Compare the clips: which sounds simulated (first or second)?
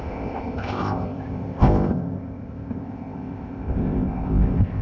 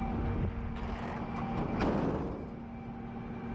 first